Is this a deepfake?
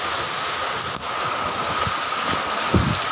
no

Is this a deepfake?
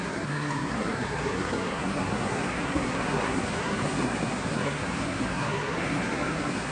yes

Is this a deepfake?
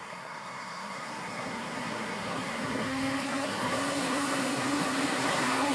yes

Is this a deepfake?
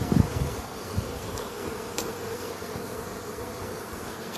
yes